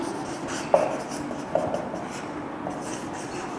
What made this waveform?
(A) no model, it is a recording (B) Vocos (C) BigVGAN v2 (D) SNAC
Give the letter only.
A